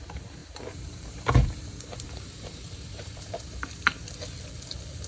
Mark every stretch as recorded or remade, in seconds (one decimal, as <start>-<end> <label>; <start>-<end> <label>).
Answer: 0.0-4.0 remade; 4.0-5.1 recorded